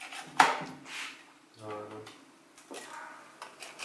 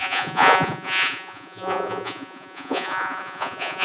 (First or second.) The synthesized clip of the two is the second